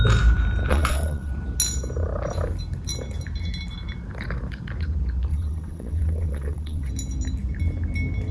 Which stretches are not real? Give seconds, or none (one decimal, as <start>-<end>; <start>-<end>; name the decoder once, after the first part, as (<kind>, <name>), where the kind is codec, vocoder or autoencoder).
0.7-1.3 (vocoder, WaveNeXt); 5.3-6.9